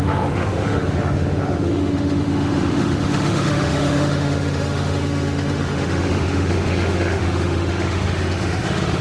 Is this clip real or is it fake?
fake